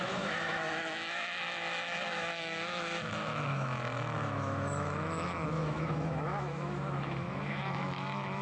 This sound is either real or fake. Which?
fake